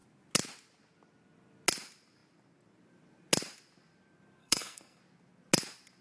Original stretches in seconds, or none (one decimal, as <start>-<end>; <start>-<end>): 0.0-4.4; 5.0-6.0